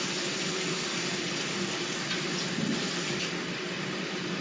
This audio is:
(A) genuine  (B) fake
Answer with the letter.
A